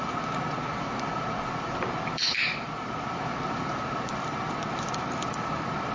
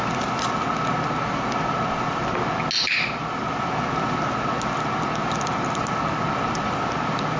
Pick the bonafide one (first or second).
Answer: second